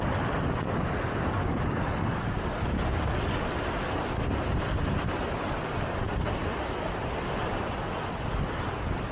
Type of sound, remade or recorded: recorded